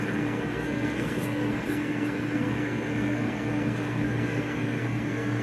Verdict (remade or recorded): remade